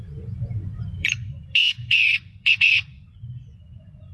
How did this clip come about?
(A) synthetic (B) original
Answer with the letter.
A